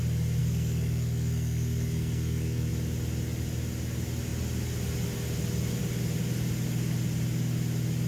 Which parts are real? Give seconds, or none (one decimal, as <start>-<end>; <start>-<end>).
0.0-0.4; 2.7-8.1